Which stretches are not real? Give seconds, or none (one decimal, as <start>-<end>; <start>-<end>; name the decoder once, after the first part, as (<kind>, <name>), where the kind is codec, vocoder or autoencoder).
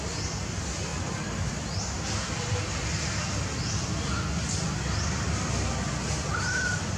0.9-1.5 (vocoder, BigVGAN v2)